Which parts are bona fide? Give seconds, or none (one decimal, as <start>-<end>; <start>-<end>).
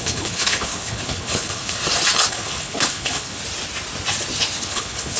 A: 1.8-2.3; 3.4-4.6